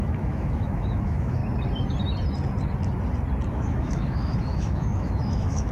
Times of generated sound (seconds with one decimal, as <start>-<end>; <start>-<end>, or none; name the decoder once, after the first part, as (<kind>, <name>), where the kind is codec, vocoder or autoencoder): 0.0-1.4 (autoencoder, DAC-VAE); 3.5-5.7